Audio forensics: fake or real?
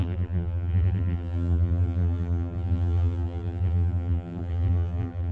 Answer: fake